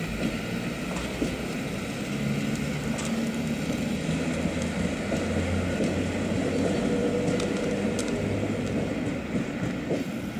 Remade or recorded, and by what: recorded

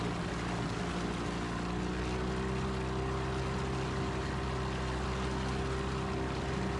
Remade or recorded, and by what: recorded